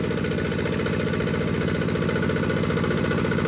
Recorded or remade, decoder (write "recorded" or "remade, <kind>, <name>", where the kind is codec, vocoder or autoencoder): recorded